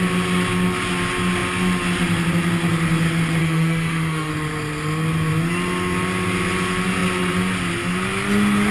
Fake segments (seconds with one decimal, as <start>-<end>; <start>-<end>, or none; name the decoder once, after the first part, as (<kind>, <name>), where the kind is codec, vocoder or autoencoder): 3.4-4.3 (autoencoder, DAC-VAE)